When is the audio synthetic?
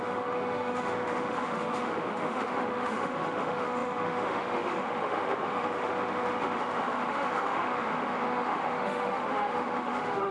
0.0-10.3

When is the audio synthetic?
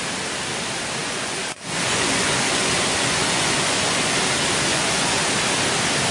1.0-4.2; 4.7-5.2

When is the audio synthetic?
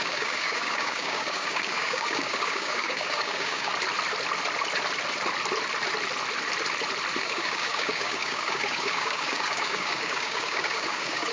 0.0-3.7; 7.2-11.3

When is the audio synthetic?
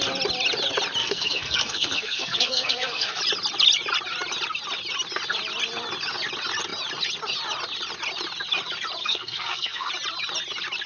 1.0-3.2; 9.0-9.9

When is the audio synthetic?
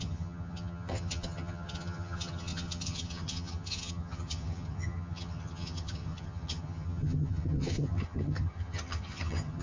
0.0-9.6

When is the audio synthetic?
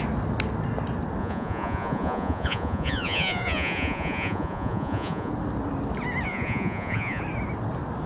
1.2-5.3; 6.3-7.2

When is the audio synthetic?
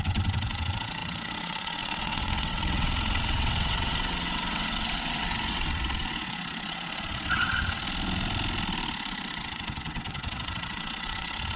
0.0-7.8; 9.3-11.6